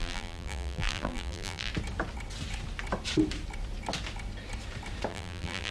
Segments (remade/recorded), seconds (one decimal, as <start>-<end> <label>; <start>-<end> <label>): 0.0-1.7 remade; 1.7-5.1 recorded; 5.1-5.7 remade